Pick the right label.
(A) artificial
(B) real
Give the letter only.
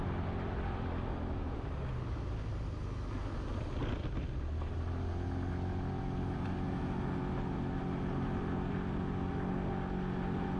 B